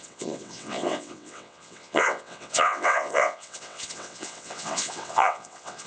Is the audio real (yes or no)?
no